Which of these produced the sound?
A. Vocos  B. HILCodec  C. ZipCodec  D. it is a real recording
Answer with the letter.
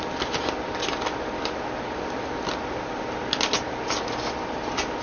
D